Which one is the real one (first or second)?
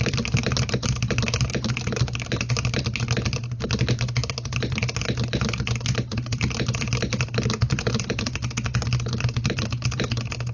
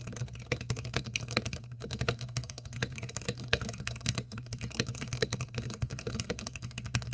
first